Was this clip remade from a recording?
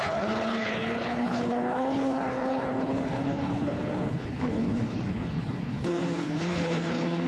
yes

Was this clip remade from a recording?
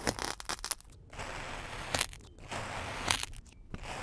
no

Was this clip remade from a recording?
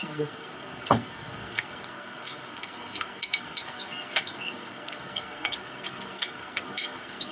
yes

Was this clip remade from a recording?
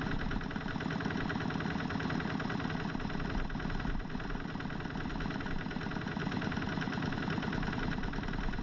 no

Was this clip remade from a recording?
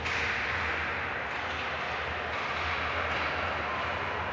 no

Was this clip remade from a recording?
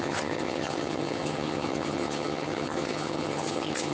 yes